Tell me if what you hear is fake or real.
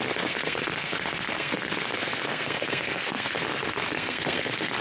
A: fake